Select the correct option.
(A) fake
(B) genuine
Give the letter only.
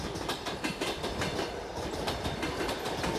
A